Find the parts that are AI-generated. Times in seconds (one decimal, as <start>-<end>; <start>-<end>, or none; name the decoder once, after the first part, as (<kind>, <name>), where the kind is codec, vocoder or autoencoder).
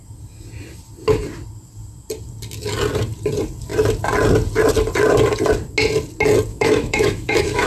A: 6.5-7.7 (autoencoder, DAC-VAE)